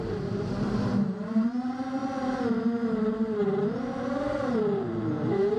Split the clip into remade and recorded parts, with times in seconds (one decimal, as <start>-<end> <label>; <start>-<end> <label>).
0.0-2.0 remade; 2.0-3.1 recorded; 3.1-5.6 remade